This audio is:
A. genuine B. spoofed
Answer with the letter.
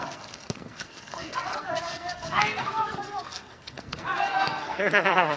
B